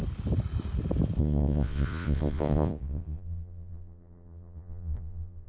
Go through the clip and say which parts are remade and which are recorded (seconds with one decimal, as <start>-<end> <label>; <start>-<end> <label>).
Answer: 0.0-1.2 recorded; 1.2-5.5 remade